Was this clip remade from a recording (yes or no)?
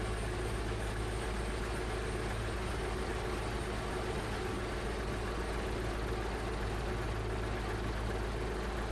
no